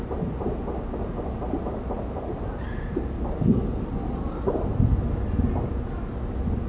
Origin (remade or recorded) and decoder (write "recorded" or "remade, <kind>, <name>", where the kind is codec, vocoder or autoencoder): recorded